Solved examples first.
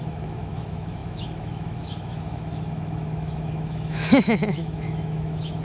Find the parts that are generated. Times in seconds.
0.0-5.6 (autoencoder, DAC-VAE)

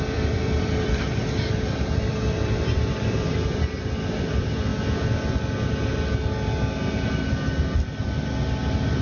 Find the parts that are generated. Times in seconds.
0.0-4.7 (vocoder, BigVGAN v2)

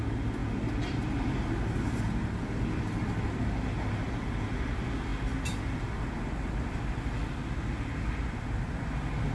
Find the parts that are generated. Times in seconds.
none

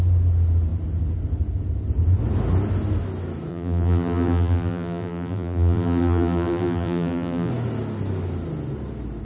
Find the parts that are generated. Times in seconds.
3.5-7.5 (vocoder, BigVGAN v2)